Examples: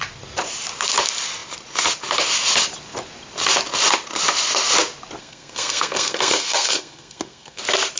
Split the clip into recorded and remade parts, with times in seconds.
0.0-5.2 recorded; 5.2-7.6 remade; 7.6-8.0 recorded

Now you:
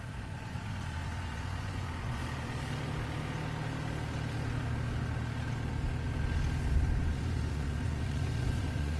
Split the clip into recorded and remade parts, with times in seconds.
0.0-2.2 remade; 2.2-7.0 recorded; 7.0-9.0 remade

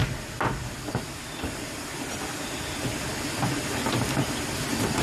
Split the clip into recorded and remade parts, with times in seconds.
0.0-5.0 recorded

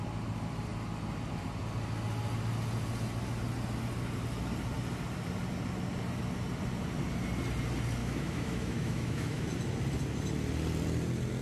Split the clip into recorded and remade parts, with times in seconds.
0.0-8.0 recorded; 8.0-9.5 remade; 9.5-11.4 recorded